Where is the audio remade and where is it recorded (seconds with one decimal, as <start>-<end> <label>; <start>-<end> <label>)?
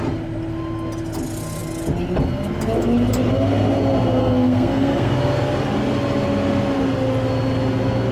0.0-4.2 recorded; 4.2-5.1 remade; 5.1-8.1 recorded